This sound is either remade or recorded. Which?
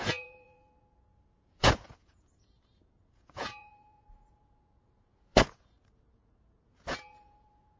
remade